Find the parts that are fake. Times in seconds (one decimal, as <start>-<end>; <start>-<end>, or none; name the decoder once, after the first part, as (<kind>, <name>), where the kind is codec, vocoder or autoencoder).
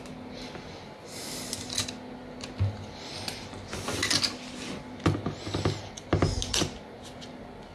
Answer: none